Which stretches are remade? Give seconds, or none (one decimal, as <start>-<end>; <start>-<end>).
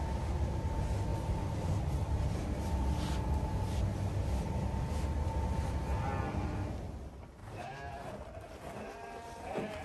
1.1-1.8; 7.4-7.9